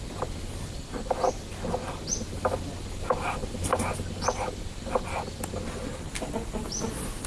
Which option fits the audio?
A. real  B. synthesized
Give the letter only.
A